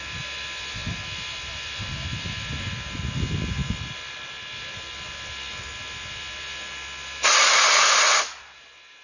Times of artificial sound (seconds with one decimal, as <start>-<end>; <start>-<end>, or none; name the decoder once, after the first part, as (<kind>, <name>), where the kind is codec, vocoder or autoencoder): none